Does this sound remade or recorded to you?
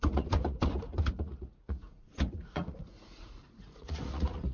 remade